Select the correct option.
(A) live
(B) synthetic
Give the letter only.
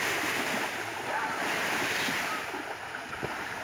A